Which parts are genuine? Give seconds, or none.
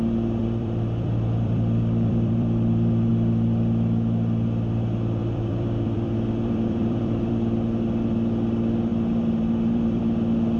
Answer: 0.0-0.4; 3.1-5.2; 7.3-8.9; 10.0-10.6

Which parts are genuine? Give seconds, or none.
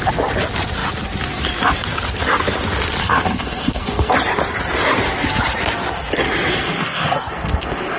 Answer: 0.0-3.0; 4.1-6.5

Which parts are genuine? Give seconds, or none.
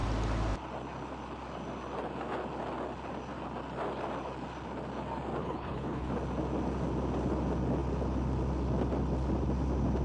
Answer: 0.0-5.4; 6.1-10.0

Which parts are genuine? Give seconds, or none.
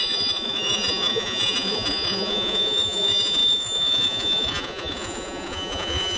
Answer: none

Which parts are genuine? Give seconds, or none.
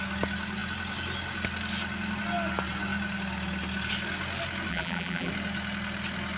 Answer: 0.0-4.7; 5.3-6.4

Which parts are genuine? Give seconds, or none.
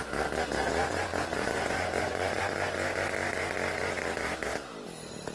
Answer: 0.0-0.9; 2.4-5.3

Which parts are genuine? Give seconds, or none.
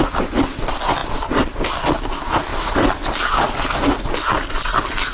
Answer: 0.0-1.0; 1.7-2.5; 3.1-5.1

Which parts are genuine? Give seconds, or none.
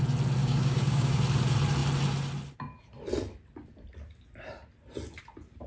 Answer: 0.0-0.4; 1.2-5.7